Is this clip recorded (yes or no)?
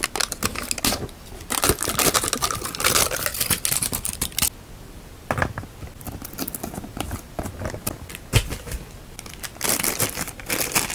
yes